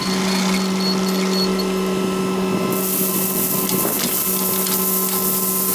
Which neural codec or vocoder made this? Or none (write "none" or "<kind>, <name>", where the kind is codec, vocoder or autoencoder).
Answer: none